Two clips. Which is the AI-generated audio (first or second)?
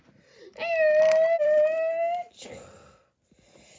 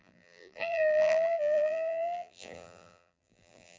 second